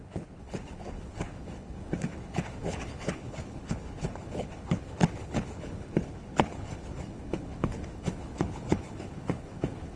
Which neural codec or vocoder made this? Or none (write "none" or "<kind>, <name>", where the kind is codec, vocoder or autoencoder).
codec, HILCodec